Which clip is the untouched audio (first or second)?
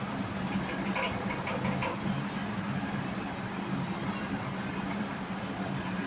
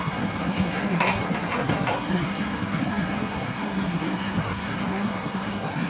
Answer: first